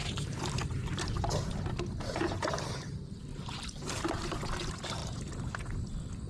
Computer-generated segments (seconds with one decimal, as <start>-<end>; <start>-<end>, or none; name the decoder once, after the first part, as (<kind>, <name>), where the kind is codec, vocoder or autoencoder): 0.0-1.3 (vocoder, BigVGAN v2); 3.3-3.9; 5.0-5.5